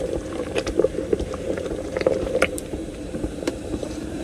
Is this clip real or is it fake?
fake